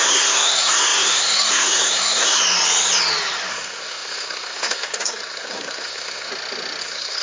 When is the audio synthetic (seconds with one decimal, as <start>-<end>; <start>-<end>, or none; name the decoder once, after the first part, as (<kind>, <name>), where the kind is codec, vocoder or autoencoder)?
0.0-2.4 (codec, SNAC); 3.5-6.3; 6.8-7.2